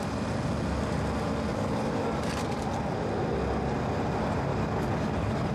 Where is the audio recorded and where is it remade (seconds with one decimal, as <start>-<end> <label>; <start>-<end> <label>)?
0.0-1.5 recorded; 1.5-2.3 remade; 2.3-4.5 recorded; 4.5-5.5 remade